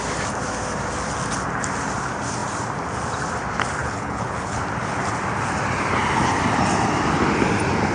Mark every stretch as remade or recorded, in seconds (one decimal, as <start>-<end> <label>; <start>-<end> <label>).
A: 0.0-3.8 recorded; 3.8-4.6 remade; 4.6-7.9 recorded